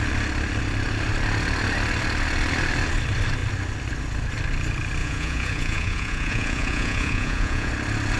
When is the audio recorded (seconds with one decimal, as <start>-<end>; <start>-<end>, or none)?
0.0-5.0; 7.7-8.2